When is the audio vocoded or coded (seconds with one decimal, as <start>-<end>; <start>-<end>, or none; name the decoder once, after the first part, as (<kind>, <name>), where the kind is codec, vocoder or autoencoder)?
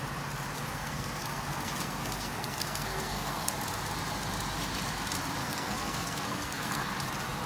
0.7-3.5 (codec, SNAC); 5.4-6.9